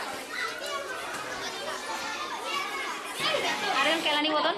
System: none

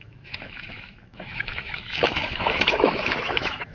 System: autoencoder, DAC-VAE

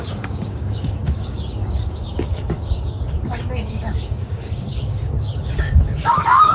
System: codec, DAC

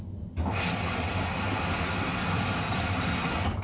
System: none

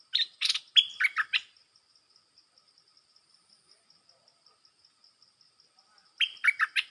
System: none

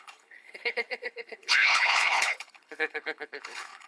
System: codec, HILCodec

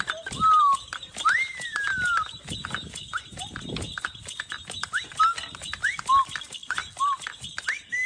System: none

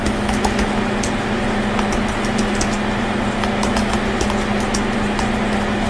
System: none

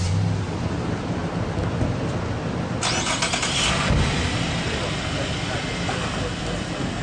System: none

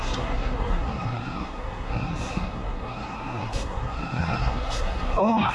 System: codec, SNAC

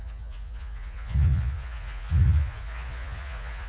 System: vocoder, Vocos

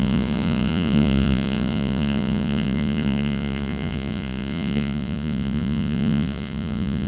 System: vocoder, Vocos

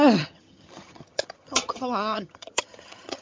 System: vocoder, HiFi-GAN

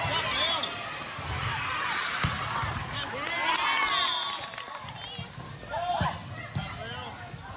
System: none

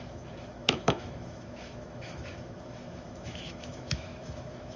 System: autoencoder, DAC-VAE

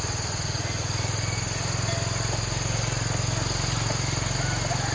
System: none